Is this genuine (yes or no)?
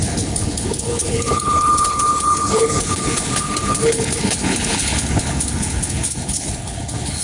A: no